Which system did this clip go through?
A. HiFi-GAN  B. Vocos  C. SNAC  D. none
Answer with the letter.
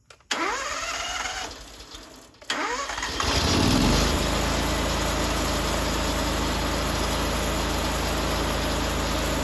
D